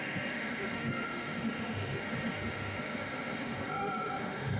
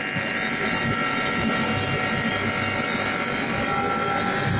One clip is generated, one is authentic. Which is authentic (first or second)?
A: second